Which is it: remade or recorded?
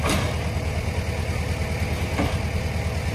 recorded